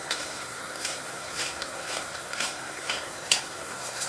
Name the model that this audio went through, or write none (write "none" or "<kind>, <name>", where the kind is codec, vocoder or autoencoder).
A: codec, SNAC